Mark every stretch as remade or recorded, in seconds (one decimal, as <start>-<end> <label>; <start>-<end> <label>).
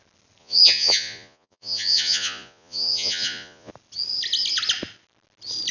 0.0-0.4 recorded; 0.4-3.7 remade; 3.7-5.7 recorded